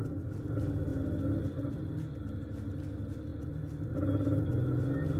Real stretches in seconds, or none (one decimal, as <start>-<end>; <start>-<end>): 0.0-5.2